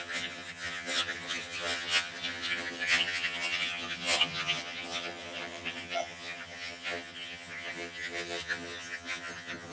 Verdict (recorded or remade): remade